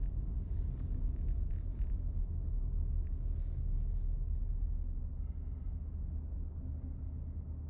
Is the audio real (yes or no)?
yes